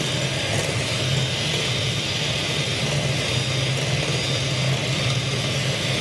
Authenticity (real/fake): real